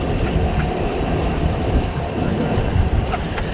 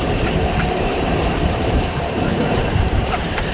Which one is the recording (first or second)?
first